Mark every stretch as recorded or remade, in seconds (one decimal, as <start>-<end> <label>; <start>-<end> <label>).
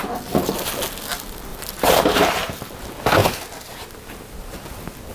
0.0-1.5 recorded; 1.5-2.7 remade; 2.7-5.1 recorded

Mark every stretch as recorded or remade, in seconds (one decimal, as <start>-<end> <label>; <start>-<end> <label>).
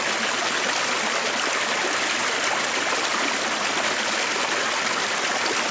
0.0-5.7 recorded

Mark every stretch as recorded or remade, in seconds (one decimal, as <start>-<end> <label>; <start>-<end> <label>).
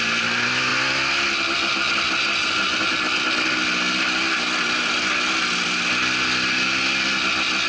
0.0-7.7 recorded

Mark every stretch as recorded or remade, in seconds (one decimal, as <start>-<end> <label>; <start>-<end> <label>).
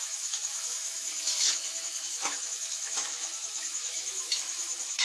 0.0-5.0 remade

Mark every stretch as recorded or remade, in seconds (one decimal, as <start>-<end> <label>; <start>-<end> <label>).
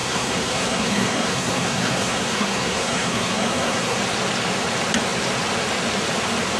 0.0-4.0 remade; 4.0-6.6 recorded